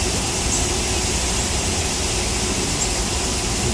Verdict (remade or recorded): recorded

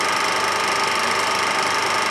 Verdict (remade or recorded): recorded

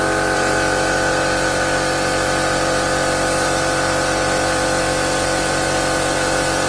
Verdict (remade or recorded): remade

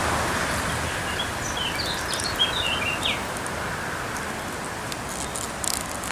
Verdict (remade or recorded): recorded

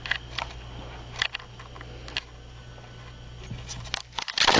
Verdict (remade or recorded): recorded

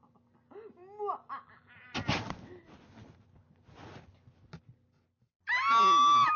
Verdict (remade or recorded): recorded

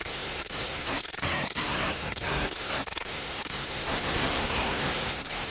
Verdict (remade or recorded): remade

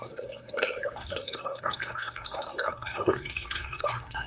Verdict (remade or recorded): remade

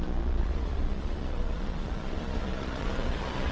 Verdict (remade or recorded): remade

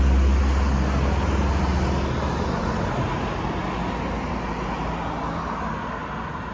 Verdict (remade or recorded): recorded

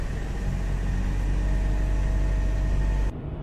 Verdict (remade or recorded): recorded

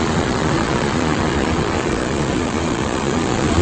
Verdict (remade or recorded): remade